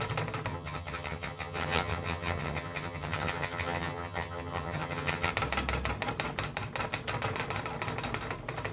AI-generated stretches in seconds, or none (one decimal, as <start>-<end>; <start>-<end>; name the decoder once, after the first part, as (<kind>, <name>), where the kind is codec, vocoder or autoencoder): 0.5-5.3 (vocoder, HiFi-GAN)